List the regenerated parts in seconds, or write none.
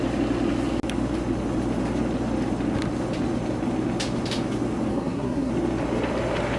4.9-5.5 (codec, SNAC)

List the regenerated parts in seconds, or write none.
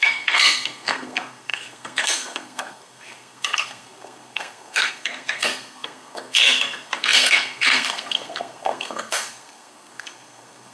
0.0-10.7 (codec, SNAC)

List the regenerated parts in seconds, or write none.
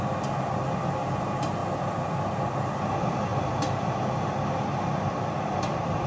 none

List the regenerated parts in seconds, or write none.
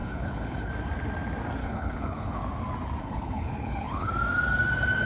0.0-0.7 (codec, HILCodec); 1.6-2.4; 3.0-4.1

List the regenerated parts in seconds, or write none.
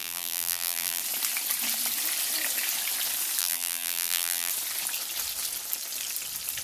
0.0-1.0 (vocoder, BigVGAN v2); 3.4-4.5